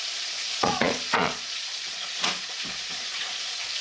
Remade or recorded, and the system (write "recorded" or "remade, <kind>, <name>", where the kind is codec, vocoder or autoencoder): remade, vocoder, Vocos